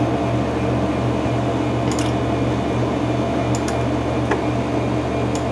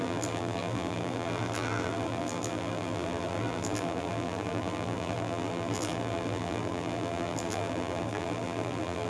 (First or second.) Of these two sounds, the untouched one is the first